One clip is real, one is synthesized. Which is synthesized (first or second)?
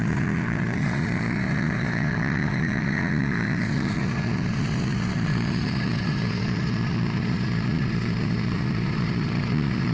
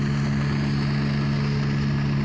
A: first